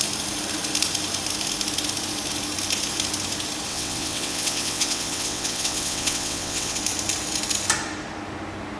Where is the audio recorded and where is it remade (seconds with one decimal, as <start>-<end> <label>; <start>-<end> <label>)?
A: 0.0-3.7 recorded; 3.7-6.8 remade; 6.8-8.8 recorded